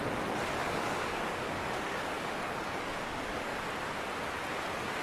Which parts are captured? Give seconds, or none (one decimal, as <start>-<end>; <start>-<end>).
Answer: 0.0-0.6; 3.6-5.0